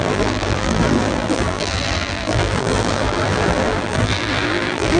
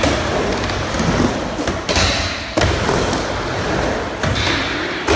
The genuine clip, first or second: second